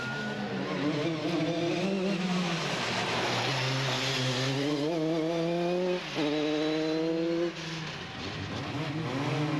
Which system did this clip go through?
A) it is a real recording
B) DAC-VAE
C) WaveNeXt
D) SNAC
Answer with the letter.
A